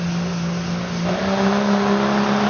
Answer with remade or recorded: recorded